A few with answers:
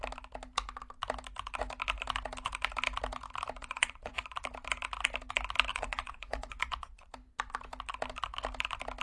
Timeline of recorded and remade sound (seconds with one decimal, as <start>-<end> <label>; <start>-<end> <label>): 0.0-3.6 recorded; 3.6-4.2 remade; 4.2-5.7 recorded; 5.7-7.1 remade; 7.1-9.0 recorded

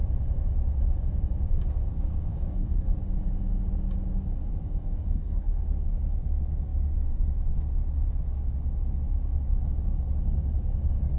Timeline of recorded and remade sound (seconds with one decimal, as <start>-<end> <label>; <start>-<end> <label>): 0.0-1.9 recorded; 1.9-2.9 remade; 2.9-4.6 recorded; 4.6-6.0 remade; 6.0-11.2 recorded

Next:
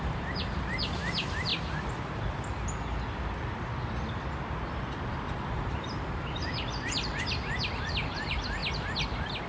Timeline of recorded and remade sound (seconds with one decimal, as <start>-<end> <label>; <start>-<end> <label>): 0.0-1.5 remade; 1.5-5.5 recorded; 5.5-8.6 remade; 8.6-9.5 recorded

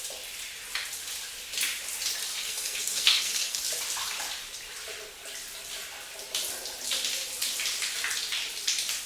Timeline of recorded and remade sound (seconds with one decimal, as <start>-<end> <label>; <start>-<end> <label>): 0.0-2.4 recorded; 2.4-3.6 remade; 3.6-9.1 recorded